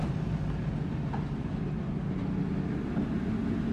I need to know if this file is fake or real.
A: real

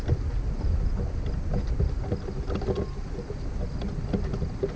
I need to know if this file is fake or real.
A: real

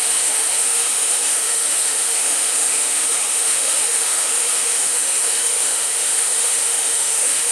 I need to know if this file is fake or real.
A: fake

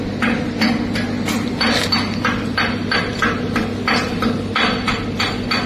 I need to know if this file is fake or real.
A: real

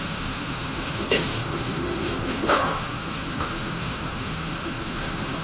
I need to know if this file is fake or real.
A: fake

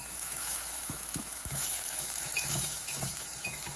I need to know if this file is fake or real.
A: fake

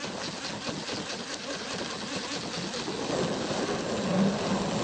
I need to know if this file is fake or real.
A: real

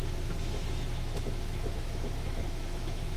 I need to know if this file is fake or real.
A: fake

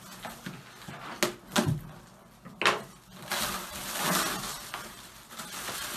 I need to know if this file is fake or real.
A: real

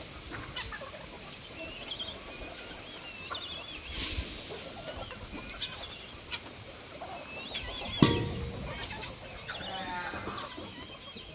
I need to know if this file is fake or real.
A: real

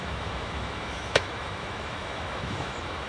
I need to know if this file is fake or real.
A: fake